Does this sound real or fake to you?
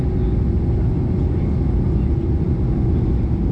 real